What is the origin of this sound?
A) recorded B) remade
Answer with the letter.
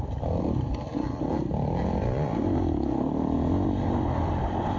A